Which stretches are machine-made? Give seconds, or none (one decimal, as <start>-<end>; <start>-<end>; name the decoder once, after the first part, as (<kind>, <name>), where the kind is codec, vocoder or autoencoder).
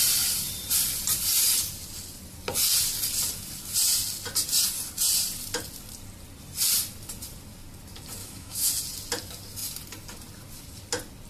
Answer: 8.2-8.7 (autoencoder, DAC-VAE)